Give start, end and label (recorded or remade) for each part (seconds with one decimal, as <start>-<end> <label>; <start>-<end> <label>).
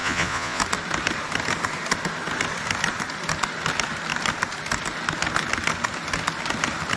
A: 0.0-0.6 remade; 0.6-7.0 recorded